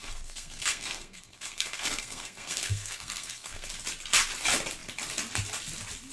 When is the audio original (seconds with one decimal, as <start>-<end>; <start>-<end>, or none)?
3.7-6.1